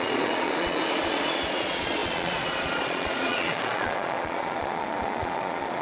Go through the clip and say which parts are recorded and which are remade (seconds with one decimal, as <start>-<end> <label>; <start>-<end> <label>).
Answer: 0.0-5.8 remade